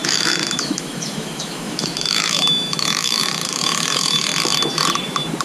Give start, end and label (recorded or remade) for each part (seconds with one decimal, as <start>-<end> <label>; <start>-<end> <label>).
0.0-4.3 remade; 4.3-5.4 recorded